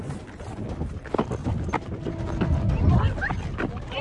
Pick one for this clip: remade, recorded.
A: recorded